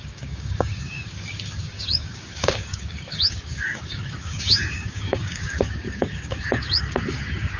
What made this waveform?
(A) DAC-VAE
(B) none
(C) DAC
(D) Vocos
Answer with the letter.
C